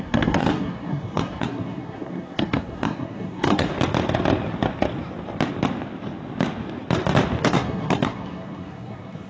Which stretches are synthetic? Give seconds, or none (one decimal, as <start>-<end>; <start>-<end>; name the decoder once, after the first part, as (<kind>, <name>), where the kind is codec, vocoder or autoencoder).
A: 0.0-3.7 (codec, SNAC); 7.4-9.3